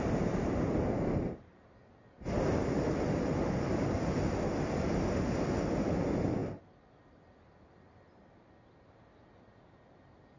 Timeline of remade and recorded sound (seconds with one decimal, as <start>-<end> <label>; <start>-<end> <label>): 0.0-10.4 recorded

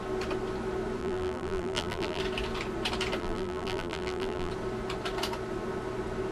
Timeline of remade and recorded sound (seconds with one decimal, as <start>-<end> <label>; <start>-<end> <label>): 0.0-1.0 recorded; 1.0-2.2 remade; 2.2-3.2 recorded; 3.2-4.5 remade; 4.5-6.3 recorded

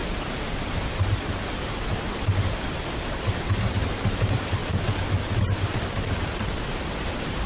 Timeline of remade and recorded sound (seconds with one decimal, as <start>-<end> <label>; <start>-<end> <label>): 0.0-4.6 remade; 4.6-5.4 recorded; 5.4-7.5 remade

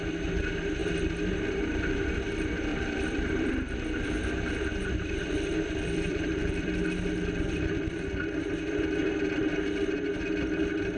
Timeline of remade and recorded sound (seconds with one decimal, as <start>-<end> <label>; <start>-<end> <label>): 0.0-2.7 recorded; 2.7-3.5 remade; 3.5-5.5 recorded; 5.5-8.3 remade; 8.3-11.0 recorded

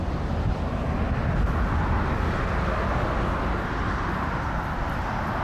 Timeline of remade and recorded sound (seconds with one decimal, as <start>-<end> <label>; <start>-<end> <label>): 0.0-5.4 recorded

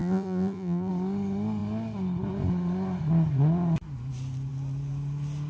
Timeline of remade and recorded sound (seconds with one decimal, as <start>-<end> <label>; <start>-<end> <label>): 0.0-0.9 remade; 0.9-5.5 recorded

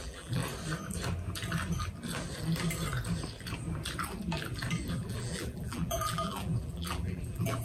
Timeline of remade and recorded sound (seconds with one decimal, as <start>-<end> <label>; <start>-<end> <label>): 0.0-0.4 remade; 0.4-4.9 recorded; 4.9-7.6 remade